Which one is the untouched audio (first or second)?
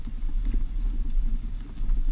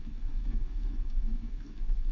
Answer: first